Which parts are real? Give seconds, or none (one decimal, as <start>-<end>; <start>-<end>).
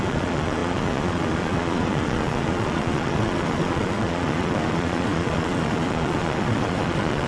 none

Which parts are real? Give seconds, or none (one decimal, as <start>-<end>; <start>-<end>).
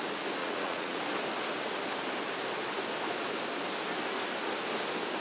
0.0-0.4; 1.0-5.2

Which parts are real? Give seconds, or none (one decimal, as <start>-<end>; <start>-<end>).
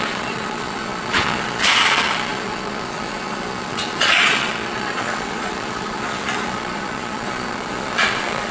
none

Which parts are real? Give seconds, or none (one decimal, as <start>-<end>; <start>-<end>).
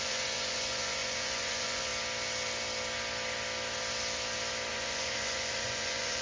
1.9-4.7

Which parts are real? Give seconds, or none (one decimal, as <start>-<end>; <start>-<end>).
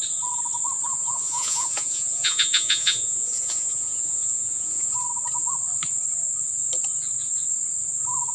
0.0-0.9; 4.9-8.3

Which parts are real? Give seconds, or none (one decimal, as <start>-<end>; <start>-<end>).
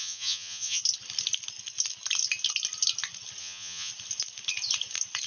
0.8-3.4; 3.9-5.3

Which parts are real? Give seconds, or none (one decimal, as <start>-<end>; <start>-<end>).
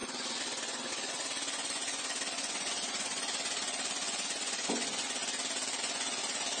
5.2-5.8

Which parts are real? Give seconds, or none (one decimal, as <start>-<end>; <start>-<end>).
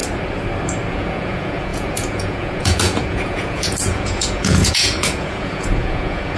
0.0-0.9